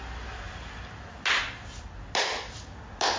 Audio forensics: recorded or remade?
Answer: recorded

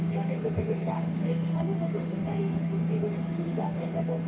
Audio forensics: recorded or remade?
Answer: remade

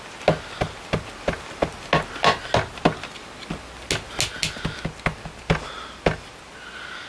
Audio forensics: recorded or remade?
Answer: recorded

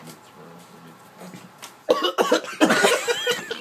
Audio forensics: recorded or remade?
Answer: recorded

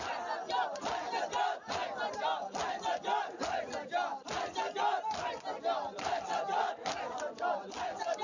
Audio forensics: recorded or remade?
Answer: recorded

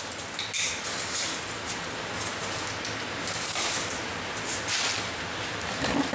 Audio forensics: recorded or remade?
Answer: recorded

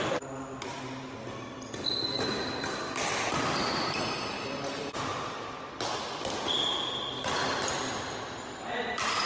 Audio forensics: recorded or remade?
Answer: recorded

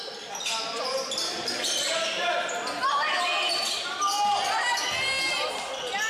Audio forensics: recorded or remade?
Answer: recorded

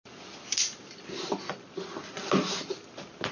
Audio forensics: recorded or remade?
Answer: recorded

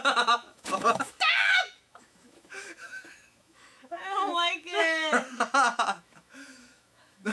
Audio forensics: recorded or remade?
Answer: remade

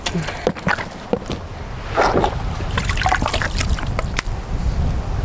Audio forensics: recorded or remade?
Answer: recorded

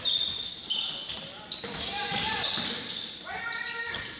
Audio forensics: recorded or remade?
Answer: recorded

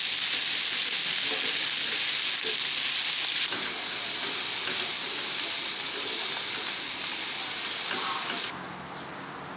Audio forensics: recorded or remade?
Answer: recorded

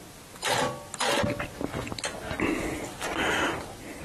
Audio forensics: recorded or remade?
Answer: recorded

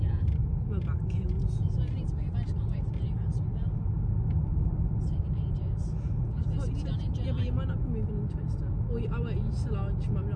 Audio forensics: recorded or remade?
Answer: recorded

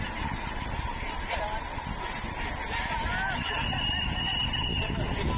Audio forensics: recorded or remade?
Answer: recorded